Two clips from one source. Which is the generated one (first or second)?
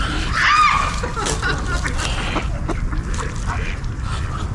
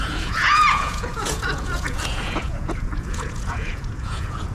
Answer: second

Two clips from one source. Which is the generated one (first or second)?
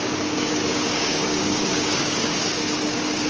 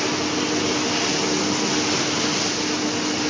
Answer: first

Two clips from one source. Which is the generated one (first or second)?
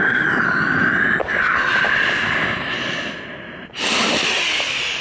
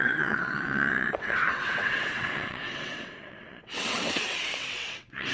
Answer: second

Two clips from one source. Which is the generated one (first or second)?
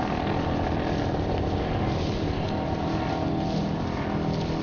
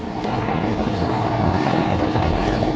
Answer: second